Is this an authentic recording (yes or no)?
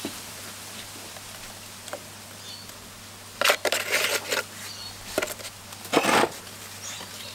yes